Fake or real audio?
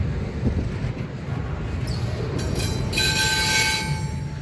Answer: real